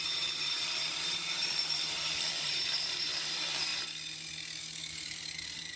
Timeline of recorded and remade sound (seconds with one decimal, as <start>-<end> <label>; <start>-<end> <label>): 0.0-3.7 remade; 3.7-4.9 recorded; 4.9-5.8 remade